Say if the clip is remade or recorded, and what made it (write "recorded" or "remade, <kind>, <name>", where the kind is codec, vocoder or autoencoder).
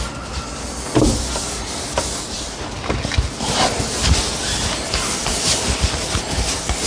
recorded